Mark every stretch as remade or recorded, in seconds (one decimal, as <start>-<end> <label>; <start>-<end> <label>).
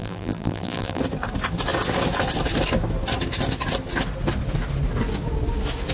0.0-1.0 remade; 1.0-5.9 recorded